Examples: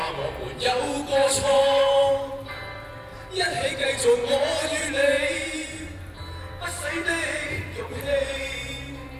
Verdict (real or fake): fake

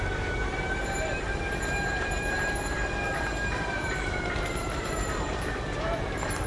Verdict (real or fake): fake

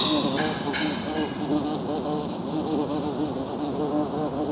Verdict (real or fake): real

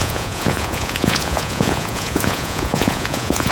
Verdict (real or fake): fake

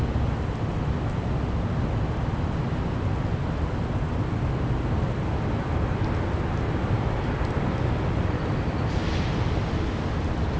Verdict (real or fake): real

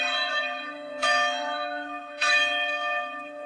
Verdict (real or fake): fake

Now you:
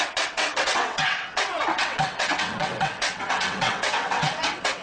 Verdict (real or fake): fake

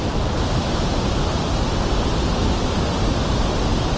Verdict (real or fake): real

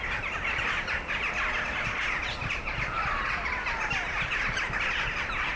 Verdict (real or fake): real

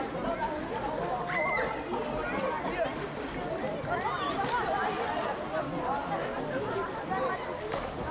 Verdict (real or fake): real